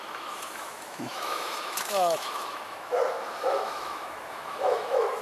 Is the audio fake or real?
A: fake